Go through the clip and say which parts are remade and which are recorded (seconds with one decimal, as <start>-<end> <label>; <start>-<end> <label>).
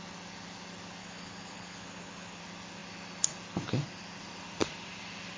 0.0-1.0 recorded; 1.0-2.4 remade; 2.4-5.4 recorded